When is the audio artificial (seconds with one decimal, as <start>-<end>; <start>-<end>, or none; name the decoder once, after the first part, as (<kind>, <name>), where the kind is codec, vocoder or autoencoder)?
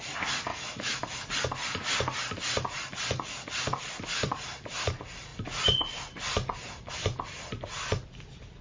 0.5-1.3 (autoencoder, DAC-VAE)